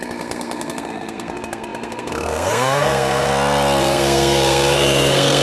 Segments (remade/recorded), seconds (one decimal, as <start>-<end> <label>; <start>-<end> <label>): 0.0-3.3 remade; 3.3-3.8 recorded; 3.8-5.4 remade